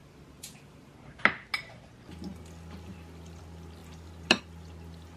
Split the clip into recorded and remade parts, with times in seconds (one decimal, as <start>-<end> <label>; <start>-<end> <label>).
0.0-1.2 remade; 1.2-3.8 recorded; 3.8-4.4 remade; 4.4-5.2 recorded

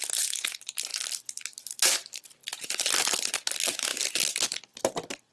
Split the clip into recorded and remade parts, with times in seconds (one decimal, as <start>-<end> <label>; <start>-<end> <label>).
0.0-2.4 recorded; 2.4-3.3 remade; 3.3-5.3 recorded

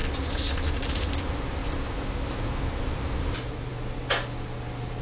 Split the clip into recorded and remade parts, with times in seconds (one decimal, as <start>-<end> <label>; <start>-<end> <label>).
0.0-0.7 recorded; 0.7-1.6 remade; 1.6-2.8 recorded; 2.8-3.7 remade; 3.7-5.0 recorded